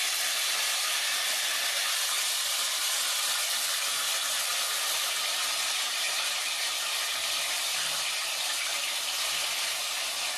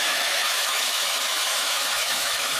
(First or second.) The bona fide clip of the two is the first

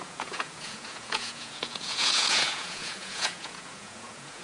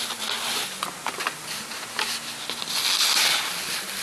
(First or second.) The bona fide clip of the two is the second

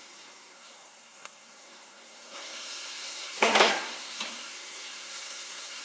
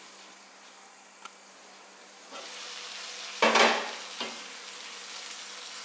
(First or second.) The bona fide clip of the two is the second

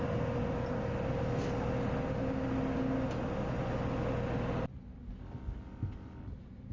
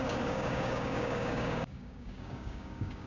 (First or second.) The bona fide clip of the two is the first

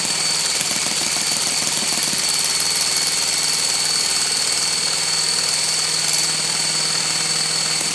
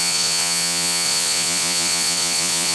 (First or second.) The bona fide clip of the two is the first